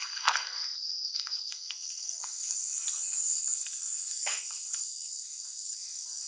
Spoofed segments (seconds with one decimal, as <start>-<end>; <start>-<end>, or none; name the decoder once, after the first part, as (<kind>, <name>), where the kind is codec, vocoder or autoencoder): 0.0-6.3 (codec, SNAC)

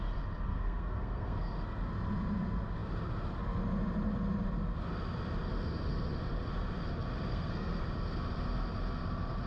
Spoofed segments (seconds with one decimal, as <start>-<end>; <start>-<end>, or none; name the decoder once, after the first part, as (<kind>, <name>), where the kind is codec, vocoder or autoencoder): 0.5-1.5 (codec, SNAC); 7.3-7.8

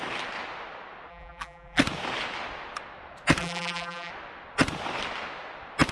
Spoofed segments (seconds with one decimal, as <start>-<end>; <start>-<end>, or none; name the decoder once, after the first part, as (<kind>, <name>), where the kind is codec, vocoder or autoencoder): 1.1-1.8 (vocoder, BigVGAN v2); 3.4-4.1

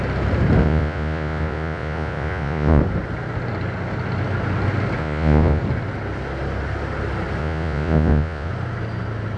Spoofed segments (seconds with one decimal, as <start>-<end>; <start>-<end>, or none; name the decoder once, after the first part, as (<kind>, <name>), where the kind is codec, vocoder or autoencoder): 0.6-2.8 (vocoder, Vocos); 5.0-5.6; 7.4-8.5

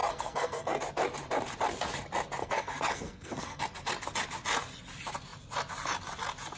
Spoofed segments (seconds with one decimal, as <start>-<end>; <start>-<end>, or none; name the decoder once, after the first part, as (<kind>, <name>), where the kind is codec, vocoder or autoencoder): 0.0-0.8 (codec, SNAC); 2.4-3.6

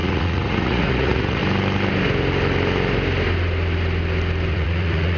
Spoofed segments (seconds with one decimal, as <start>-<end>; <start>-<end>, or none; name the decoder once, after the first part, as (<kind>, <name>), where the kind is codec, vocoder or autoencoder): 0.0-1.4 (vocoder, Vocos); 4.5-5.2